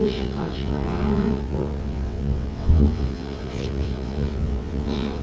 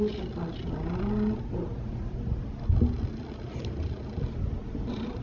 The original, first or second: second